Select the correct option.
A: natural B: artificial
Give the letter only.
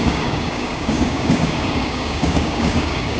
B